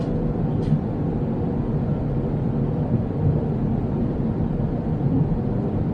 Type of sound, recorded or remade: recorded